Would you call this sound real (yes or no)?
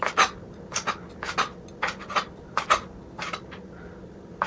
yes